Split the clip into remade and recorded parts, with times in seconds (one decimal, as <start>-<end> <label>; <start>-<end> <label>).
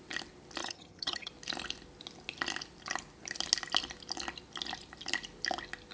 0.0-0.6 recorded; 0.6-1.3 remade; 1.3-5.9 recorded